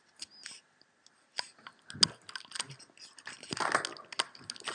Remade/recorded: recorded